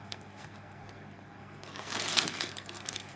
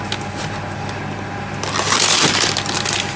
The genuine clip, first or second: second